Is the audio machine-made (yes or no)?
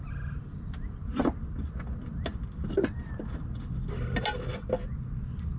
no